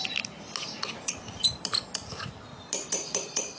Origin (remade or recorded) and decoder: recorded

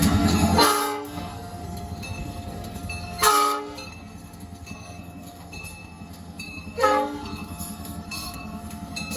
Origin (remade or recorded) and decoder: remade, codec, SNAC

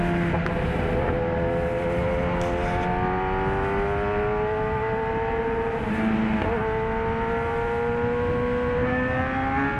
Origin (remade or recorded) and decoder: recorded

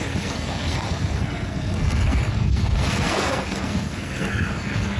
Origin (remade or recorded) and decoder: remade, codec, SNAC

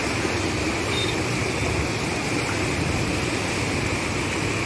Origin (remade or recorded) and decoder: recorded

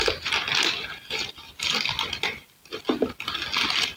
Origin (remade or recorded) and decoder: recorded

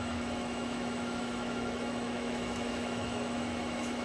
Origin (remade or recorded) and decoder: remade, autoencoder, DAC-VAE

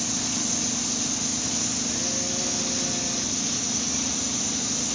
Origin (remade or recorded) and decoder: recorded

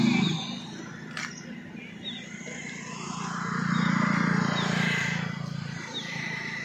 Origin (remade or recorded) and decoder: recorded